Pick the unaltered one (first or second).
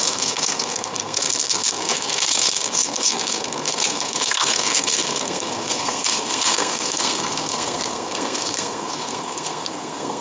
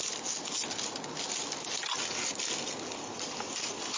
second